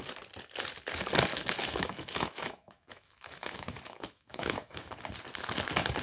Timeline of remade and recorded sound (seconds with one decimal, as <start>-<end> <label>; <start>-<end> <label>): 0.0-1.3 recorded; 1.3-4.9 remade; 4.9-6.0 recorded